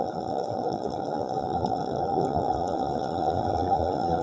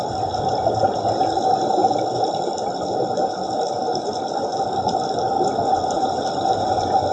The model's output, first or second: first